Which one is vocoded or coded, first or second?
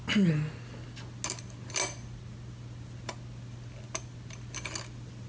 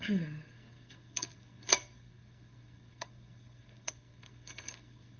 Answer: second